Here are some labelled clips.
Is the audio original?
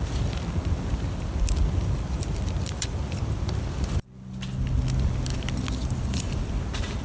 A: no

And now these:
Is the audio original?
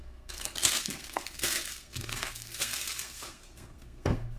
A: no